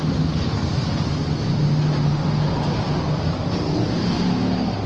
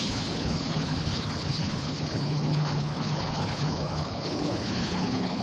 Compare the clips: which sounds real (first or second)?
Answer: first